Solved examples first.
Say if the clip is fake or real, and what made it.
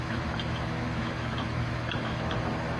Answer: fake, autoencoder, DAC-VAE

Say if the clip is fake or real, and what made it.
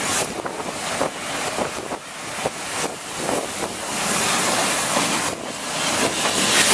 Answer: real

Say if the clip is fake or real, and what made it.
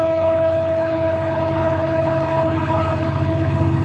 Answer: fake, codec, HILCodec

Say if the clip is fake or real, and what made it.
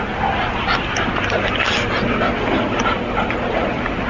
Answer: real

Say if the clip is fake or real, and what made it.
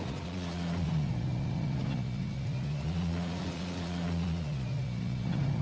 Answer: fake, vocoder, Vocos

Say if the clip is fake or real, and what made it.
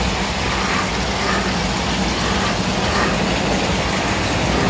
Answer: real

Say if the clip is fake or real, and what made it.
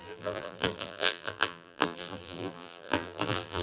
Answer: fake, vocoder, BigVGAN v2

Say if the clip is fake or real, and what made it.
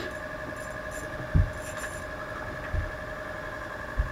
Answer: real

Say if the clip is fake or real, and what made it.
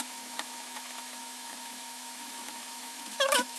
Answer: fake, autoencoder, DAC-VAE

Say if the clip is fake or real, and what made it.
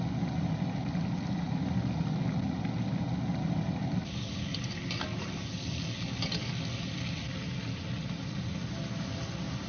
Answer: real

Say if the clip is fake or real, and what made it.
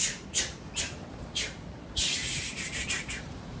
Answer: fake, vocoder, BigVGAN v2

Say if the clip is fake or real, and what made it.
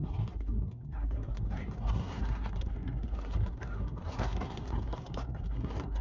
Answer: fake, codec, SNAC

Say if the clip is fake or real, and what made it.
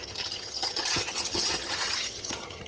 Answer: fake, vocoder, HiFi-GAN